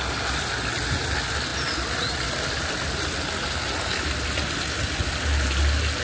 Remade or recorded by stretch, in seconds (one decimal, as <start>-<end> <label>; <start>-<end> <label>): 0.0-6.0 recorded